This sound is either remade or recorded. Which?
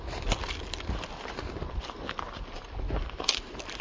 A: recorded